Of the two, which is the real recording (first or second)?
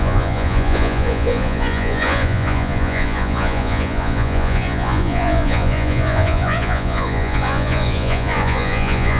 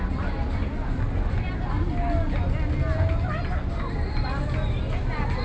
second